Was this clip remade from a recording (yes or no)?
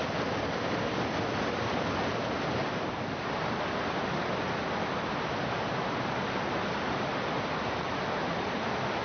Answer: no